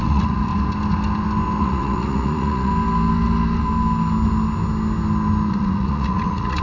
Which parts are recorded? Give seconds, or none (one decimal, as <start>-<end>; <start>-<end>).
0.5-1.6; 2.7-5.5